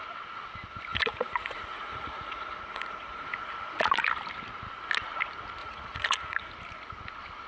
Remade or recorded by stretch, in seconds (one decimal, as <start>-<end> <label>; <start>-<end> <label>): 0.0-0.9 recorded; 0.9-3.8 remade; 3.8-5.6 recorded; 5.6-6.5 remade; 6.5-7.5 recorded